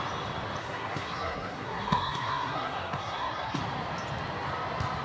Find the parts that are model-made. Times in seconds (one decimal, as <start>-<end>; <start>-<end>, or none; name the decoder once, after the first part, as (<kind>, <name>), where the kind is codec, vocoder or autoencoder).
0.6-3.6 (codec, SNAC)